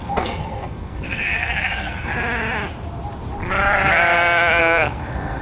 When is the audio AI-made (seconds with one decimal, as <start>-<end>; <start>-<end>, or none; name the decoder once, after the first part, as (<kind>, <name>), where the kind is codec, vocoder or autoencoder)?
0.0-2.1 (codec, SNAC); 4.6-5.4